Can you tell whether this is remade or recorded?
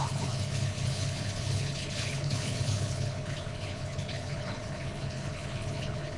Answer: remade